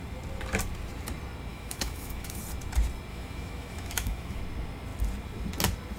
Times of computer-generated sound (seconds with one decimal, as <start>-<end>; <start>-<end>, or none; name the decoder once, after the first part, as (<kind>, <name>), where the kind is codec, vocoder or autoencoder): 1.5-2.4 (autoencoder, DAC-VAE); 3.1-4.4